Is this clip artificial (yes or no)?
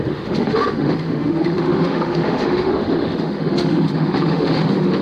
yes